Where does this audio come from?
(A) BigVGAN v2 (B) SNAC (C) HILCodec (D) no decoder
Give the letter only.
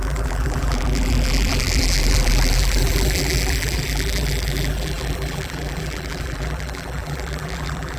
A